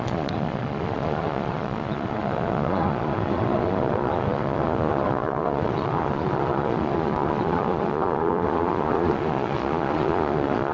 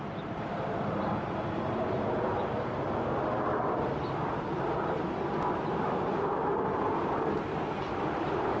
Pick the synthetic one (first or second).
first